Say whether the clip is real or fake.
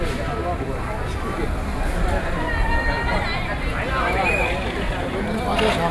real